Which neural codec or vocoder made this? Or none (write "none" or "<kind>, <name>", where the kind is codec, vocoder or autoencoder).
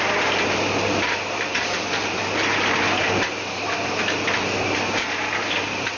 none